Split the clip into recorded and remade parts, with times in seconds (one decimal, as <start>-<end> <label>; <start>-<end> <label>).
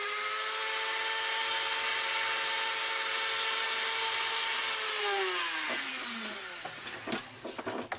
0.0-8.0 recorded